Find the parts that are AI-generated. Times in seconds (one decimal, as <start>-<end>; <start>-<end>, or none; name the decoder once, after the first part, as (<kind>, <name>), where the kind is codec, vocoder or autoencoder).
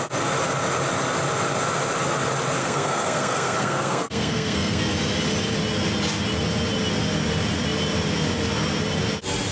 2.6-4.8 (codec, SNAC)